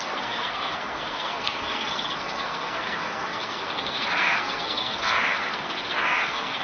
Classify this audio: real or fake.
fake